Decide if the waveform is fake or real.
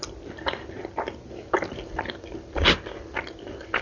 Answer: real